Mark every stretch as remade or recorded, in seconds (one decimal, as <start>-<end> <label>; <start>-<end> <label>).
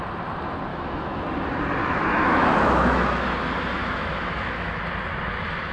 0.0-0.7 recorded; 0.7-1.2 remade; 1.2-1.8 recorded; 1.8-3.2 remade; 3.2-3.8 recorded; 3.8-4.8 remade; 4.8-5.7 recorded